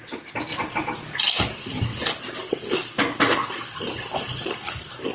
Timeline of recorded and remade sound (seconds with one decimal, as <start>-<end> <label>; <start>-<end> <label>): 0.0-5.1 recorded